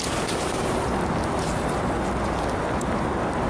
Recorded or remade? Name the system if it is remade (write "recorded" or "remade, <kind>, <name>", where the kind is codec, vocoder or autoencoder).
recorded